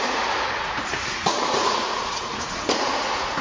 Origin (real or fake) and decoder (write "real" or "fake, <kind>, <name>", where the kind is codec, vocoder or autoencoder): fake, vocoder, Vocos